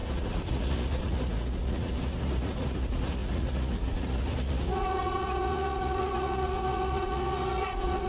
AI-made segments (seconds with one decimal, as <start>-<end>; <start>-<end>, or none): 0.0-8.1